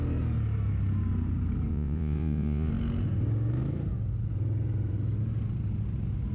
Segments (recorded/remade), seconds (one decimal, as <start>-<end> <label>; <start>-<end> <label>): 0.0-1.7 recorded; 1.7-2.7 remade; 2.7-6.3 recorded